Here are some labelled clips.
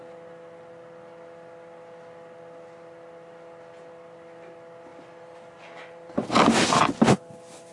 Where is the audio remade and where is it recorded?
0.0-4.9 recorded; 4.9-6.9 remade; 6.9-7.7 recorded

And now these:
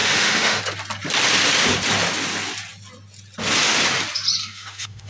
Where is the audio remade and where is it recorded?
0.0-0.6 remade; 0.6-4.4 recorded; 4.4-5.1 remade

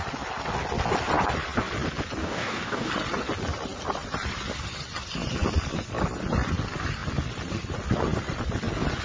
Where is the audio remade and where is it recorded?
0.0-2.2 recorded; 2.2-2.9 remade; 2.9-9.0 recorded

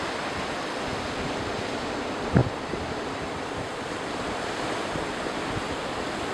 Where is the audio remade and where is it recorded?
0.0-6.3 recorded

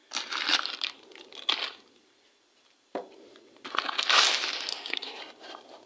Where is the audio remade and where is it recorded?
0.0-4.7 recorded; 4.7-5.2 remade; 5.2-5.9 recorded

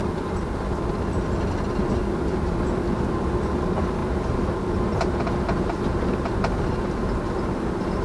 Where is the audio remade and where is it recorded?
0.0-4.0 recorded; 4.0-4.6 remade; 4.6-8.0 recorded

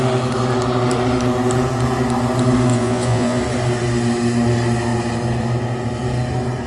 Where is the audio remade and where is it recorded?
0.0-2.7 recorded; 2.7-3.4 remade; 3.4-6.7 recorded